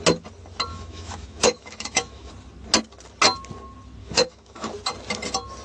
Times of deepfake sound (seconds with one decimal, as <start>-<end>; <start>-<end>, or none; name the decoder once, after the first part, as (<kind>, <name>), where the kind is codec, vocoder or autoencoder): 0.7-2.3 (autoencoder, DAC-VAE); 4.0-4.7